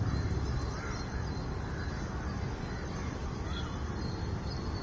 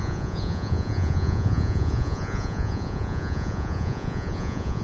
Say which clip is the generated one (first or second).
second